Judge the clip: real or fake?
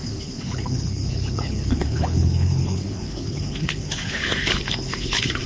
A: fake